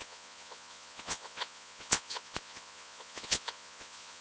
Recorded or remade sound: remade